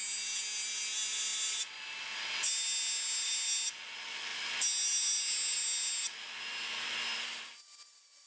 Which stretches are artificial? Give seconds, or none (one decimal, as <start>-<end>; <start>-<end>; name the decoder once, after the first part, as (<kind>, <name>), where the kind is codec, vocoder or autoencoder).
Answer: none